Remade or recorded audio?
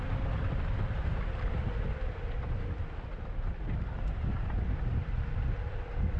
remade